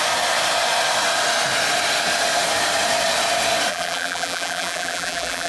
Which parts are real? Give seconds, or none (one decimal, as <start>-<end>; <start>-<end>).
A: 0.0-3.7